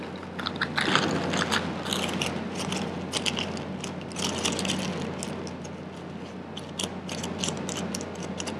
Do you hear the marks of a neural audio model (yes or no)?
no